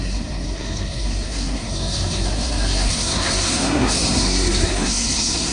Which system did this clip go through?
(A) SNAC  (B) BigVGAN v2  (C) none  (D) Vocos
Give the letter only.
A